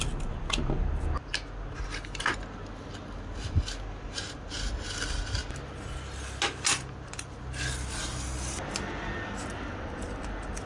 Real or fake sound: real